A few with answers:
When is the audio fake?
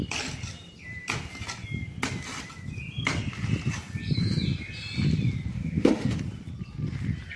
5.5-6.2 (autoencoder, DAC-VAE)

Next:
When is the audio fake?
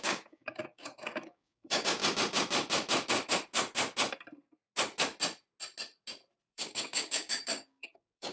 0.0-2.0 (codec, DAC); 6.5-8.3